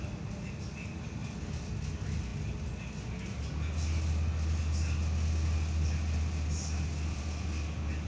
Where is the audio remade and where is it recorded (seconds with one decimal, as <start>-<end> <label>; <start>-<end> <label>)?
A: 0.0-8.1 recorded